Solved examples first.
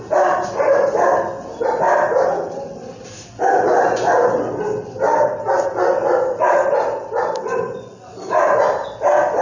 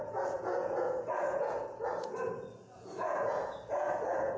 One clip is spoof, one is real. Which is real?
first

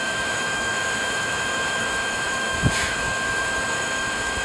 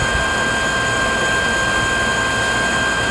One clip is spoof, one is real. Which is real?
second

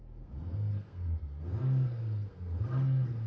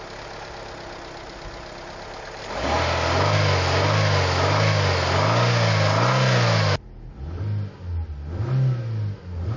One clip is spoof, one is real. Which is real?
second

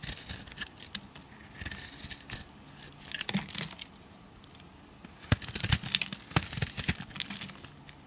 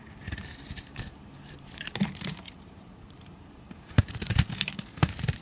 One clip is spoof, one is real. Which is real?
first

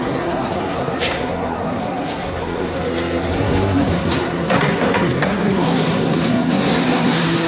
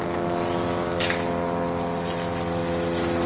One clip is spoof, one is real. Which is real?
second